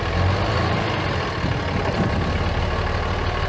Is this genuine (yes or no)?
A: yes